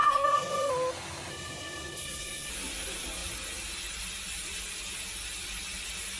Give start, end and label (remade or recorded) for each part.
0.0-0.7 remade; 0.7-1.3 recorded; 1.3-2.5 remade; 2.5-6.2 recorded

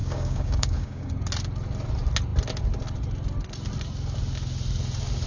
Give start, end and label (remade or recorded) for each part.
0.0-1.1 remade; 1.1-5.3 recorded

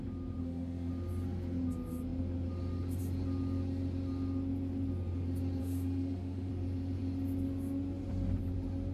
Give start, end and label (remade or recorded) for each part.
0.0-0.4 recorded; 0.4-0.9 remade; 0.9-5.6 recorded; 5.6-6.5 remade; 6.5-8.9 recorded